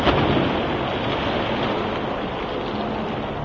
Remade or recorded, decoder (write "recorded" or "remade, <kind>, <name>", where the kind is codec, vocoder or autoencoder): recorded